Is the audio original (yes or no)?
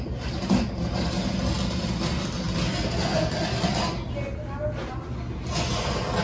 yes